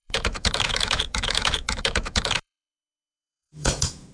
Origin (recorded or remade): remade